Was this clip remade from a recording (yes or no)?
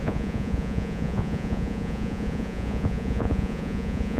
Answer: yes